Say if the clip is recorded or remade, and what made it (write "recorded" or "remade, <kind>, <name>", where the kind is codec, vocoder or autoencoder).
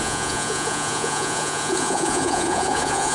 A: remade, vocoder, Vocos